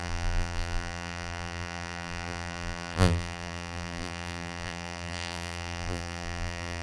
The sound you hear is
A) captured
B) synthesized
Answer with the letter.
B